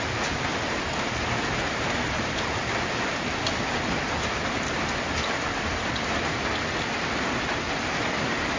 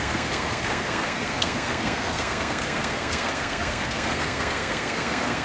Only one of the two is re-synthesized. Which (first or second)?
second